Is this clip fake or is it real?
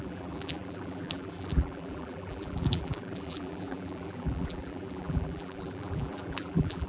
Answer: fake